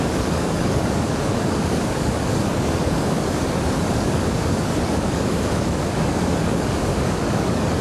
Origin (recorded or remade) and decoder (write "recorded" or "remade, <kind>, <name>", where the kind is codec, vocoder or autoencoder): remade, codec, DAC